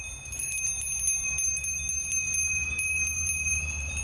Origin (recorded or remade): remade